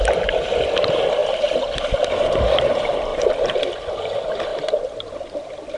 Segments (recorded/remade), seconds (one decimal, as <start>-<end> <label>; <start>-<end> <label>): 0.0-5.8 recorded